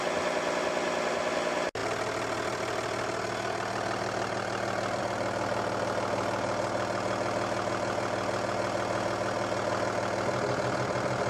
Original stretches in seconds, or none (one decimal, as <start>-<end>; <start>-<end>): 0.0-11.3